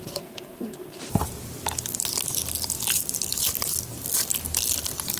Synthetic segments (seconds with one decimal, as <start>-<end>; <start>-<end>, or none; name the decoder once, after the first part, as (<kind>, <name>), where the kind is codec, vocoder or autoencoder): 0.0-1.0 (codec, SNAC)